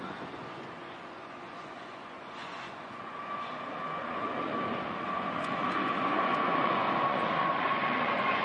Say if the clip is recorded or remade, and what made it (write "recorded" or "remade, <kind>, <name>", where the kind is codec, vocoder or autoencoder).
remade, vocoder, Vocos